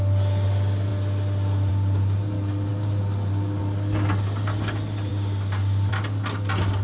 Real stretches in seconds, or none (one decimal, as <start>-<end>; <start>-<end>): 0.0-6.8